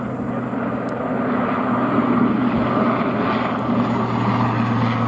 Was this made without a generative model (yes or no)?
yes